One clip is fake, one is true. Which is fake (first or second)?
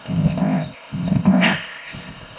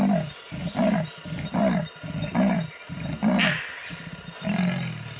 first